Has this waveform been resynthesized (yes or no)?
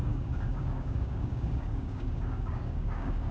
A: yes